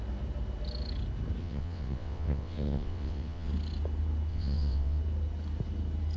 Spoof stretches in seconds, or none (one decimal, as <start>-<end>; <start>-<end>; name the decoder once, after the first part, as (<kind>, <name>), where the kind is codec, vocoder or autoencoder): 1.4-3.5 (vocoder, WaveNeXt); 4.3-5.0